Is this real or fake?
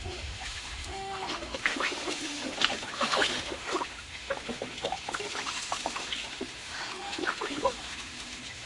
fake